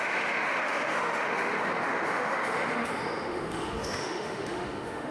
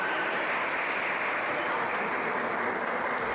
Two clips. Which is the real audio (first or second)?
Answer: second